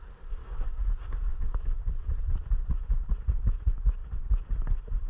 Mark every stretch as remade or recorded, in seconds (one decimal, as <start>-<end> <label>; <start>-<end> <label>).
0.0-5.1 recorded